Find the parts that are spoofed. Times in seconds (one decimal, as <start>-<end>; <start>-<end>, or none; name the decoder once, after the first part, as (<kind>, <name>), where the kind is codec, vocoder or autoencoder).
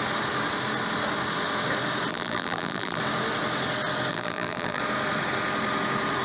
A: 2.1-3.0 (vocoder, BigVGAN v2); 4.1-4.8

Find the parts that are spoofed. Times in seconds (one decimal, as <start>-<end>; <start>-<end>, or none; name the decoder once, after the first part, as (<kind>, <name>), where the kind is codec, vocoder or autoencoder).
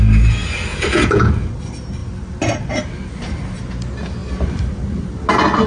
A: 0.7-1.3 (vocoder, Vocos)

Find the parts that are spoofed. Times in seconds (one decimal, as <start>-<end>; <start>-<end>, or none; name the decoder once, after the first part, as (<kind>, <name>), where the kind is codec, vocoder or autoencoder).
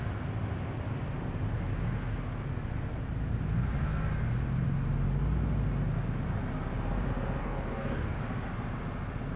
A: 7.4-8.2 (codec, DAC)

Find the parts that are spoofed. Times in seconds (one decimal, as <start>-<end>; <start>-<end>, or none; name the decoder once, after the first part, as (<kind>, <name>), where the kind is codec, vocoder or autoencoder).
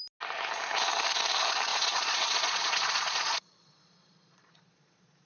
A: 1.7-5.3 (vocoder, Vocos)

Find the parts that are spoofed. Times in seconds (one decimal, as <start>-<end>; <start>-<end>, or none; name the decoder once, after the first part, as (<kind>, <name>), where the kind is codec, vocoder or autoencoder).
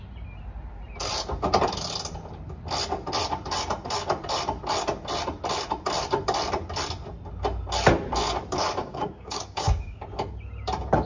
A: 8.8-10.0 (codec, DAC)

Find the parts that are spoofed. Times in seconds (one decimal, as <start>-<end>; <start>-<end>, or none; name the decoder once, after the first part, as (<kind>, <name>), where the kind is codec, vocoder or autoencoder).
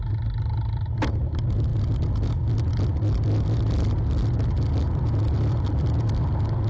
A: none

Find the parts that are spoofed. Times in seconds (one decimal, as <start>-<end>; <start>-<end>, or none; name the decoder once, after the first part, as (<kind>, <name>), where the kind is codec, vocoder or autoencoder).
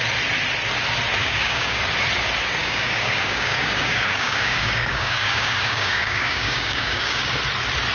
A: 1.2-1.8 (codec, DAC); 2.6-7.3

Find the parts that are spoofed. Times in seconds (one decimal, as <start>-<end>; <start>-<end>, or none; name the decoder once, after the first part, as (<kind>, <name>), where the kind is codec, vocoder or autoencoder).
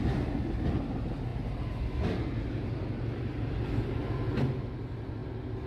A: none